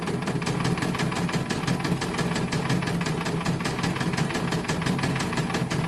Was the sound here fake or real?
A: real